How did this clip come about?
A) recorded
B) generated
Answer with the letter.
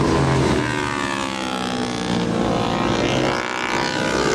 A